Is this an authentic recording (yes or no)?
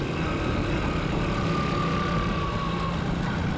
yes